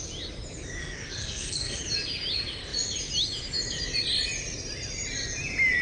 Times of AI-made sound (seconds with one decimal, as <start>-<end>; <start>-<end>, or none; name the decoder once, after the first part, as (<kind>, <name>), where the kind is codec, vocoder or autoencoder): 0.8-1.8 (codec, SNAC)